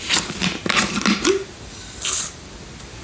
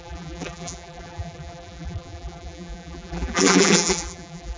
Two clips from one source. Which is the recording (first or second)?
first